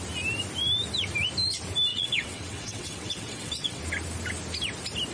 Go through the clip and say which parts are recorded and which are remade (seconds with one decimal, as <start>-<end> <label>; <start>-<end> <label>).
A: 0.0-1.9 recorded; 1.9-3.8 remade; 3.8-5.1 recorded